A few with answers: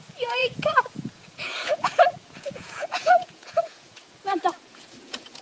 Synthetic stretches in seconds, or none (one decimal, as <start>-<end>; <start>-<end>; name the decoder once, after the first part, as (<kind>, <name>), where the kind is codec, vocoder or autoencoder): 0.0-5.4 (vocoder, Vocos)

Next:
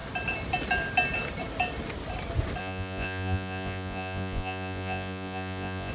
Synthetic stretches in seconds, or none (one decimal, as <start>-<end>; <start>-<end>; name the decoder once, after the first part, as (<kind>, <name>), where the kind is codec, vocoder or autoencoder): 2.6-5.9 (vocoder, Vocos)

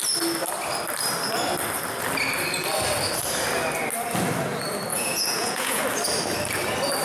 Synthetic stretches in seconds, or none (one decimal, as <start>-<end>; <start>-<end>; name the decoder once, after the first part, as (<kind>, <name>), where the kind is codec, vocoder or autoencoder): 4.9-5.8 (vocoder, Vocos)

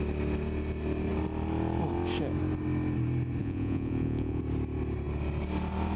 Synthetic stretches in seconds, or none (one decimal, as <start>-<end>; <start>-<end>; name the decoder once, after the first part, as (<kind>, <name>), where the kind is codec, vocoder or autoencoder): 3.4-4.4 (vocoder, Vocos)

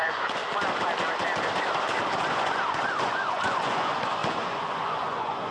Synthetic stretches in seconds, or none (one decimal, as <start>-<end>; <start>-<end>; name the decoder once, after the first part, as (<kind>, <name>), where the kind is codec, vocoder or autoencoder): 0.0-0.4 (vocoder, Vocos); 2.3-5.5